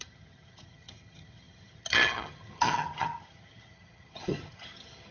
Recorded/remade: remade